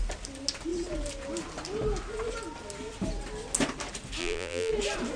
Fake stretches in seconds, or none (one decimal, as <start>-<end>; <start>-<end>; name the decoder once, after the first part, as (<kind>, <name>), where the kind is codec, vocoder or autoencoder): 4.2-4.7 (vocoder, BigVGAN v2)

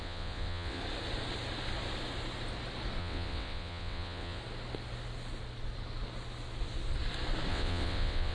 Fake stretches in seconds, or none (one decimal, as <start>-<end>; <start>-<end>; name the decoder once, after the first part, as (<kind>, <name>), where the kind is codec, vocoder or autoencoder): 0.0-0.8 (vocoder, WaveNeXt); 3.0-4.4; 7.5-8.3

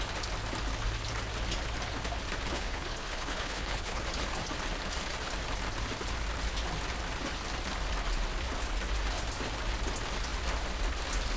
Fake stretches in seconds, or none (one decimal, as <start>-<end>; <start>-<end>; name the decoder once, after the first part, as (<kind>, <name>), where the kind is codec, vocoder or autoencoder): 2.5-4.0 (codec, HILCodec)

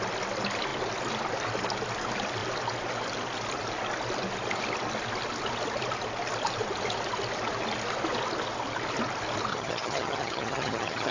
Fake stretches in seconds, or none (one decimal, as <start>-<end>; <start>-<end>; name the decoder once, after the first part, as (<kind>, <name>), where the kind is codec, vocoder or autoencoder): 9.5-11.1 (vocoder, HiFi-GAN)

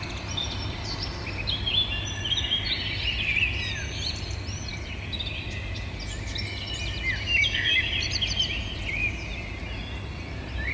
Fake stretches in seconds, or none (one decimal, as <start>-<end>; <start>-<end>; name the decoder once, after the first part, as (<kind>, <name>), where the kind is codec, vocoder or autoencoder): none

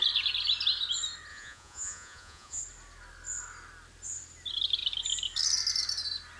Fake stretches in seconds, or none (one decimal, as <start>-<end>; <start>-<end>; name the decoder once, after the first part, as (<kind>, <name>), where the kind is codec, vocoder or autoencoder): 1.3-2.6 (vocoder, Vocos)

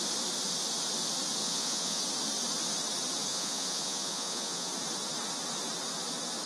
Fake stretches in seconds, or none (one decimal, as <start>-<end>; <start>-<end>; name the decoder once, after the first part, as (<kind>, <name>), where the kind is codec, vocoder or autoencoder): 1.4-2.0 (vocoder, Vocos); 3.3-4.7